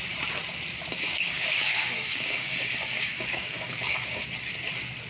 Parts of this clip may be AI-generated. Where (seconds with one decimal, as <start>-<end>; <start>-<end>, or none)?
1.1-4.2